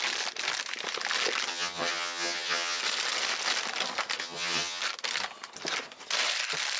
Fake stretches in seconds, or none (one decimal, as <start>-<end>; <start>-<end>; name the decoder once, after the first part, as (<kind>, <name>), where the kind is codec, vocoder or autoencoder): 1.5-2.8 (vocoder, HiFi-GAN); 4.2-4.8